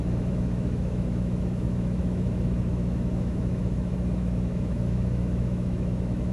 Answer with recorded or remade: remade